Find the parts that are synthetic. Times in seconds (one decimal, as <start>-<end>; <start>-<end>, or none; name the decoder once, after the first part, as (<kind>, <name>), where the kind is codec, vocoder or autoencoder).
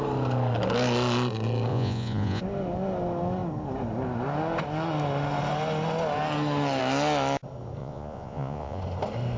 1.7-2.4 (vocoder, Vocos); 7.8-8.8